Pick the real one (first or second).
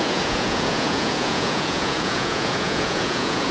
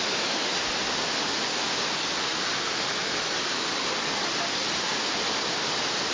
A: second